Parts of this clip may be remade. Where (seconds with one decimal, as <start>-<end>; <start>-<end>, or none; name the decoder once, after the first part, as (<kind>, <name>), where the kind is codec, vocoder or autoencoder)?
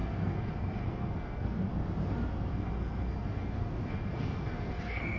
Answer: 0.0-1.7 (codec, SNAC); 2.5-5.2